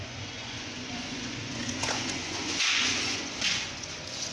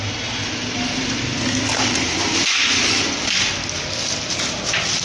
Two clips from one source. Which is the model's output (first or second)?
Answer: first